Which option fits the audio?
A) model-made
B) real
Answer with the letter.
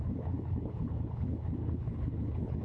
A